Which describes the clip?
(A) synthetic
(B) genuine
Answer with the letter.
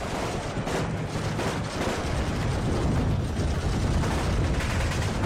B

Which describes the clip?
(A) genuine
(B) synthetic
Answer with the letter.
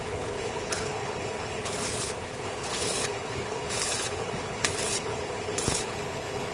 B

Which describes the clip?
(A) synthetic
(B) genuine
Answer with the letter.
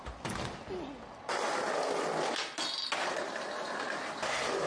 B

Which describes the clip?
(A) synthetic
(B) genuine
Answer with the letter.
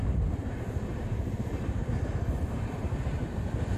B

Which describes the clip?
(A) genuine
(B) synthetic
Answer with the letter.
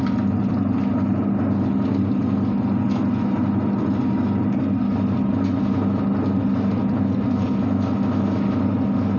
A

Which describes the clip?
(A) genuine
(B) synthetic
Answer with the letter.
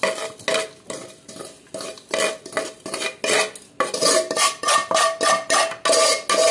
A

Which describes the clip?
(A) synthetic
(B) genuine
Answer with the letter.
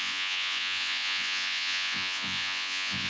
A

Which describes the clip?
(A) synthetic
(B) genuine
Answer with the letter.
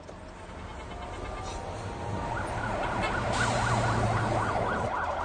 B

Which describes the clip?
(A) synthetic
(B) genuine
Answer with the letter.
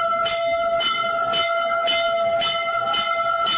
B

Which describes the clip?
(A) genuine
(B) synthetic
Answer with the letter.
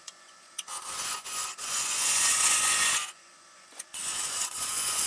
B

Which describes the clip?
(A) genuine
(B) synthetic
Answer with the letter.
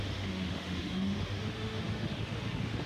B